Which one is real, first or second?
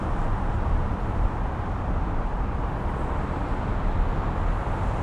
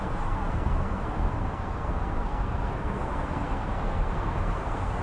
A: first